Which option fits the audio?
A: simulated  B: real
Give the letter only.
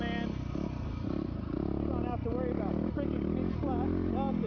B